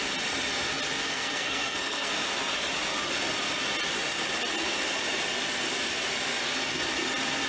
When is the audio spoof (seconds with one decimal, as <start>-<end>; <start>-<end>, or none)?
1.0-2.1